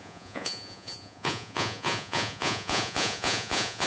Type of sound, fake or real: fake